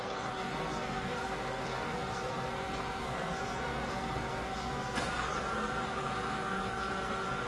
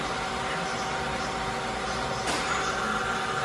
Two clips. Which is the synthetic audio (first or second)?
first